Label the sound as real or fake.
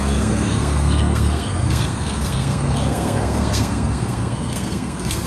fake